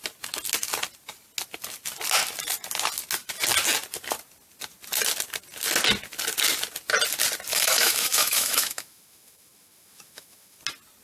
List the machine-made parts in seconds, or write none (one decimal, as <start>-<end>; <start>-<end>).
7.5-10.6